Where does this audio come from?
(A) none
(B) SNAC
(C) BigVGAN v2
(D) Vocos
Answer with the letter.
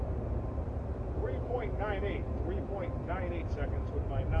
A